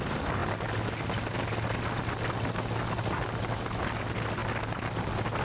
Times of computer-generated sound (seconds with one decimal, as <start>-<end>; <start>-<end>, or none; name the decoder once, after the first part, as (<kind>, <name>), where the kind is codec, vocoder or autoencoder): none